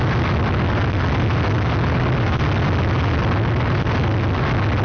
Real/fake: real